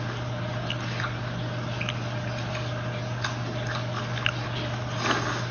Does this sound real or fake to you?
real